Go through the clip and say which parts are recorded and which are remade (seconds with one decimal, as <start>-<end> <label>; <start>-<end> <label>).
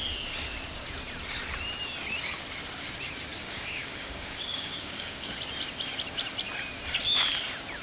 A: 0.0-3.4 recorded; 3.4-5.3 remade; 5.3-7.8 recorded